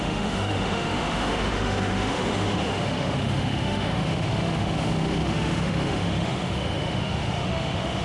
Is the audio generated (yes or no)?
yes